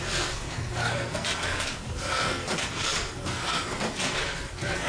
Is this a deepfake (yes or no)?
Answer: yes